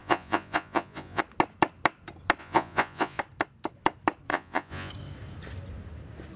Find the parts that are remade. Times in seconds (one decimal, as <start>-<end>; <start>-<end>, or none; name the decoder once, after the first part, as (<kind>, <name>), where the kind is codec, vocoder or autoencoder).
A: 0.0-1.2 (vocoder, Vocos); 2.4-3.2; 4.3-4.9